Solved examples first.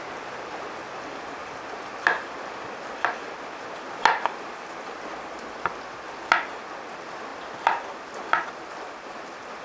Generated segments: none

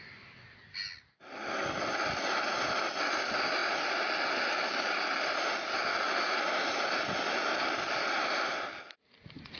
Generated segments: none

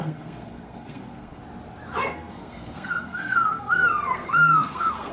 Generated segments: 0.0-1.4; 2.1-5.1

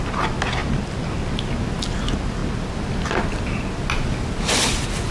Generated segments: none

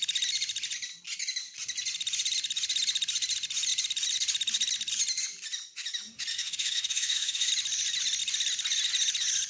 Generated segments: 6.3-7.5

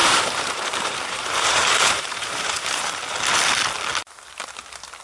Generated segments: 0.0-3.0